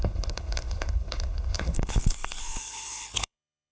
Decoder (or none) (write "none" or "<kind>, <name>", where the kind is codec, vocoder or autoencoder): codec, HILCodec